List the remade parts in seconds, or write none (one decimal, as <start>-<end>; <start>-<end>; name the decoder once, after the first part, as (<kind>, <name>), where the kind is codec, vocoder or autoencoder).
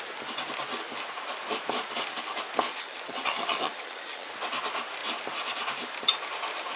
2.7-4.3 (vocoder, HiFi-GAN)